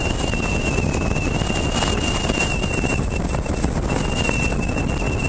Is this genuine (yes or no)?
yes